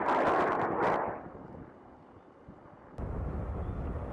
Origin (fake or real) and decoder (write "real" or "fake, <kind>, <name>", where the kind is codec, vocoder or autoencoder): real